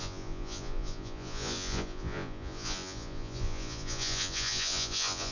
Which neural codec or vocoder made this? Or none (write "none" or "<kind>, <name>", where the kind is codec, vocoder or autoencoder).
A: vocoder, Vocos